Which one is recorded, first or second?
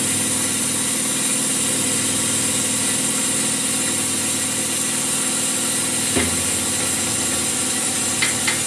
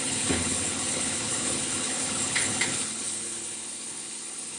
first